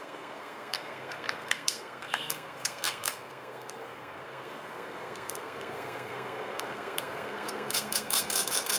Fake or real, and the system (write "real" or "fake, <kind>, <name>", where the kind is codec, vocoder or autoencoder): fake, codec, SNAC